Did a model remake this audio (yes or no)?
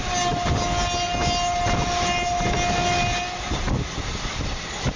no